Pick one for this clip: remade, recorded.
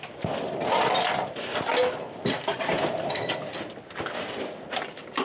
recorded